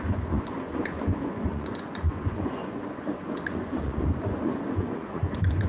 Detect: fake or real fake